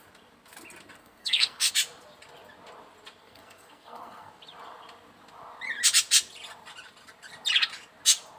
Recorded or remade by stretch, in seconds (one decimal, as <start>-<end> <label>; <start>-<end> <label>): 0.0-1.0 recorded; 1.0-1.7 remade; 1.7-3.2 recorded; 3.2-4.3 remade; 4.3-8.4 recorded